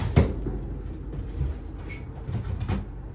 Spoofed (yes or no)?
no